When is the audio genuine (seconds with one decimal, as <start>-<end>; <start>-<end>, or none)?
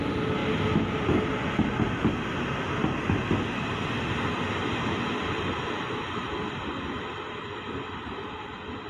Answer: 0.0-0.4; 1.4-8.9